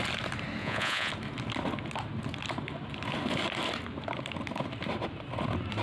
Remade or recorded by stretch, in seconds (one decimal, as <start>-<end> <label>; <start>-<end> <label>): 0.0-0.6 recorded; 0.6-1.1 remade; 1.1-5.8 recorded